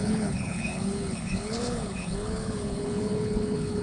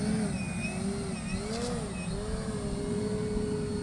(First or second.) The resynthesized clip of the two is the first